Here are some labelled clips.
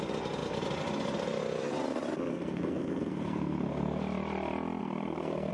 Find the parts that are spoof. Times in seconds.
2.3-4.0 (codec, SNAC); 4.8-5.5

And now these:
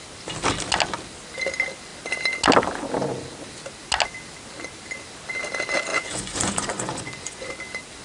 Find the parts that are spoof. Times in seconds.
5.9-7.5 (vocoder, Vocos)

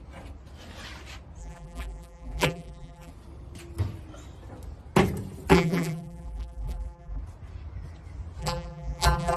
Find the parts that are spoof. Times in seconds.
1.4-3.1 (vocoder, BigVGAN v2); 5.5-7.2; 8.4-9.4

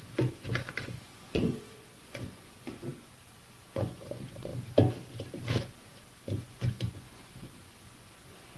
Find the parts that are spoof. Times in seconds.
0.0-4.5 (vocoder, Vocos); 5.6-8.6

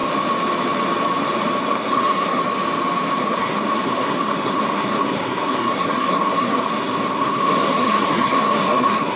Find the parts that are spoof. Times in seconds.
1.6-2.4 (codec, SNAC); 3.2-9.2

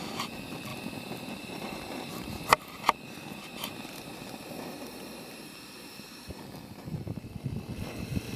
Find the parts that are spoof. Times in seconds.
none

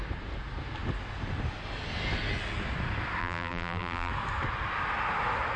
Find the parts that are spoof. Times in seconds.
3.2-4.1 (vocoder, BigVGAN v2)